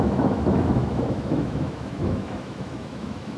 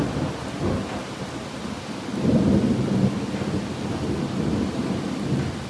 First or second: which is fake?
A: first